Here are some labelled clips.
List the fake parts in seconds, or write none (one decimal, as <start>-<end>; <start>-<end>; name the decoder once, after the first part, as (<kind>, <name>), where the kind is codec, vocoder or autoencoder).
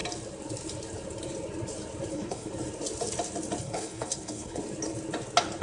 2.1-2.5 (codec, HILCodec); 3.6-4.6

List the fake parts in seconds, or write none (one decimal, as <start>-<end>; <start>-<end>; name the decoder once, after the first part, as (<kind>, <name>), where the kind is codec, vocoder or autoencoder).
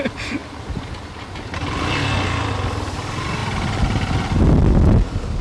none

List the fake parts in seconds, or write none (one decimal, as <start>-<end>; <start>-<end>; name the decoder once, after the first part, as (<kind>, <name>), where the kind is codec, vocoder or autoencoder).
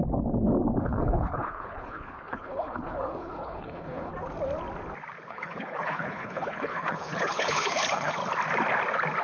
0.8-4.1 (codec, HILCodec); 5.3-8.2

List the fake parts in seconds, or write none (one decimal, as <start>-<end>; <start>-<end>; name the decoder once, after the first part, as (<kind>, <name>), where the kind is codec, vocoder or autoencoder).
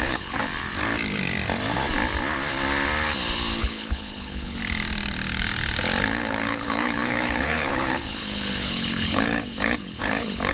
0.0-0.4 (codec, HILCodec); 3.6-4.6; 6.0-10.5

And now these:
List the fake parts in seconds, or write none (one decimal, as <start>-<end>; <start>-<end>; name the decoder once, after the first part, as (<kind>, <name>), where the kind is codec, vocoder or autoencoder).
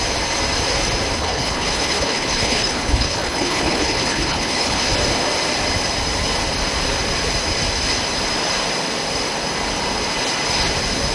1.2-4.9 (codec, HILCodec)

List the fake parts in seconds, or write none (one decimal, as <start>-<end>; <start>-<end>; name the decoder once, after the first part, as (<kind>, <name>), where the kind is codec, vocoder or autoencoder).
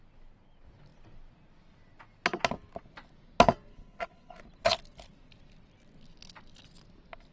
3.7-4.4 (codec, HILCodec)